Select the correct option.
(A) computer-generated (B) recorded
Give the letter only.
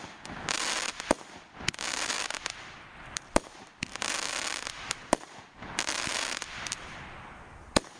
A